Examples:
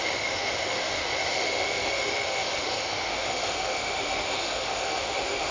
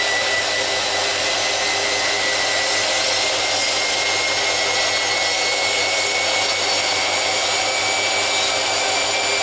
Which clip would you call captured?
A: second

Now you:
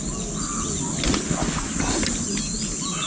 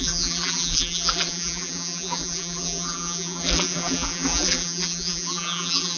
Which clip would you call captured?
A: first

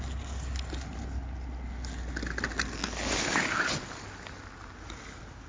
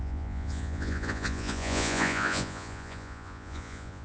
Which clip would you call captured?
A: first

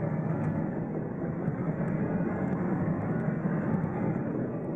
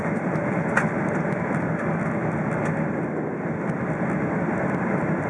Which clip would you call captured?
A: second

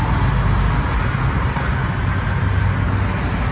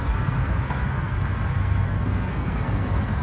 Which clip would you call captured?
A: first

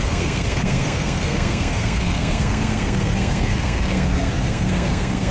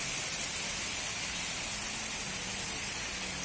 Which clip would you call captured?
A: second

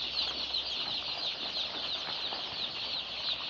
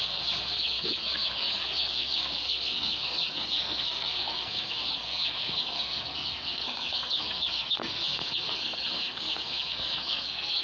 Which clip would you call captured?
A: first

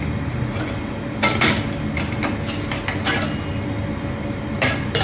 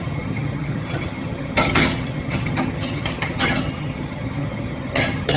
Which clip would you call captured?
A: first